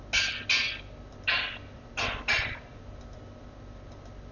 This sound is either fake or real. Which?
real